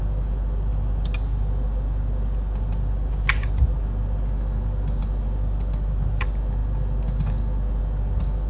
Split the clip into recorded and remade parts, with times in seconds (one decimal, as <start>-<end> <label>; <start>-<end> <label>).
0.0-8.5 recorded